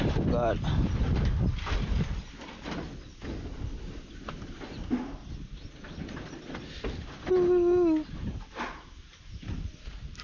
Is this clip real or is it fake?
real